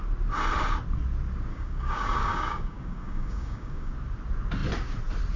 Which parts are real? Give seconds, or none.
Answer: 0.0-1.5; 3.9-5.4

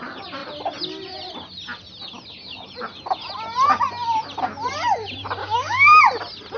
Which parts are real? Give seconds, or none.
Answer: 0.0-5.4; 6.0-6.6